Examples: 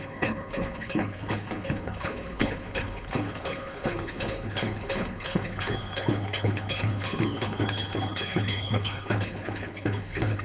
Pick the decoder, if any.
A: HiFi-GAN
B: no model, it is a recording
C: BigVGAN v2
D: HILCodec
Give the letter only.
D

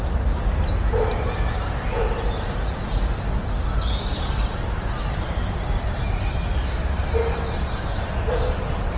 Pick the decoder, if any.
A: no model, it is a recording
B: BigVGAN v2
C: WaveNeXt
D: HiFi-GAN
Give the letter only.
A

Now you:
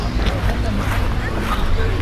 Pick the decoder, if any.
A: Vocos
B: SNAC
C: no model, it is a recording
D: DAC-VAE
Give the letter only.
C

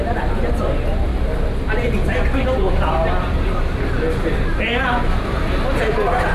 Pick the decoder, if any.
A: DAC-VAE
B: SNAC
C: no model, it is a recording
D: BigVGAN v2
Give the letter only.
C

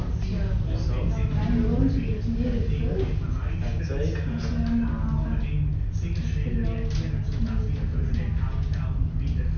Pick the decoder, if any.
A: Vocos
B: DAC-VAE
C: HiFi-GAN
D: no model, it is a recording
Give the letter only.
D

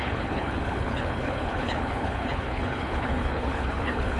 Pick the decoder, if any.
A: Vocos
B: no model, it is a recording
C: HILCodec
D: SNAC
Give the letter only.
C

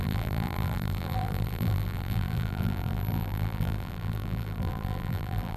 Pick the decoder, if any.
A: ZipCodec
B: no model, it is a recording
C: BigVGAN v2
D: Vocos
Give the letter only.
C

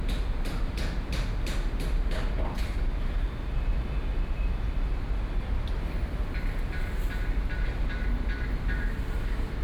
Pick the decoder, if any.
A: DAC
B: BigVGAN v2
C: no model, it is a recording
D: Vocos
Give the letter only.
C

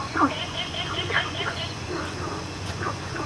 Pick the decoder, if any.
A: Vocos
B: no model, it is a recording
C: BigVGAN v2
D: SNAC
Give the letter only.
A